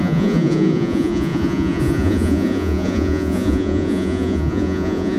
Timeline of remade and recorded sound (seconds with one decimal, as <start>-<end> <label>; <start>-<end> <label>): 0.0-5.2 remade